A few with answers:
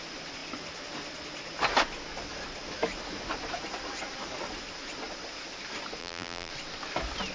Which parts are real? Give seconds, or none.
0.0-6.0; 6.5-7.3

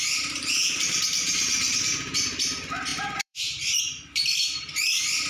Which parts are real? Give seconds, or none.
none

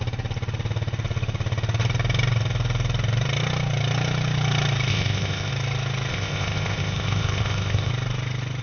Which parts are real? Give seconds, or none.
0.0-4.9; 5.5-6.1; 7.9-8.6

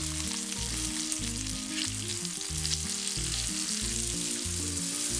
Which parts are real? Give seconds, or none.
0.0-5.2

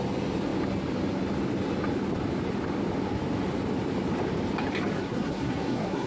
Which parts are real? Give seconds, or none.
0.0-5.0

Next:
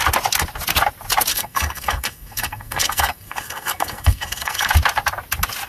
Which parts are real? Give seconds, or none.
0.0-1.3; 4.7-5.7

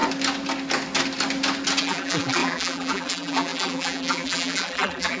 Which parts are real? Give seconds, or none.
0.0-1.8

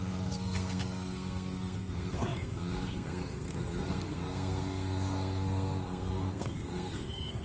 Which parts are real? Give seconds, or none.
none